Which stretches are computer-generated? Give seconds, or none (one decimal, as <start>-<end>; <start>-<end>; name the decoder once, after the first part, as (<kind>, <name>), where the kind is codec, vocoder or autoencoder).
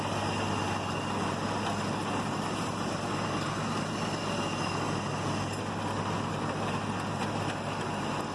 2.0-3.0 (vocoder, BigVGAN v2)